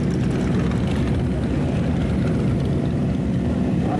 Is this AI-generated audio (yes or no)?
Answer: no